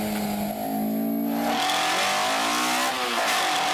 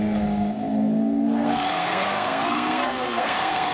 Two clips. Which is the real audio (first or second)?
first